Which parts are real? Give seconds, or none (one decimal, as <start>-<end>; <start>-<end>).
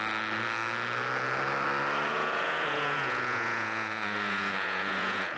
0.0-2.1